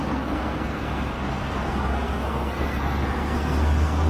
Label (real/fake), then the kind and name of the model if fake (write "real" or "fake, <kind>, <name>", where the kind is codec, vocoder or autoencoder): fake, codec, SNAC